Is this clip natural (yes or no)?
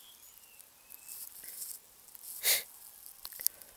yes